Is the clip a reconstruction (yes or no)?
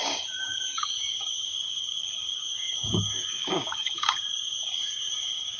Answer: yes